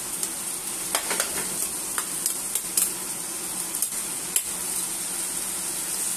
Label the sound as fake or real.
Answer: real